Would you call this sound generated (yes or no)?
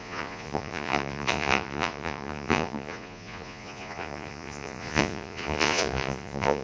yes